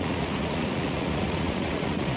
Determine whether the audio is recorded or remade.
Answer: remade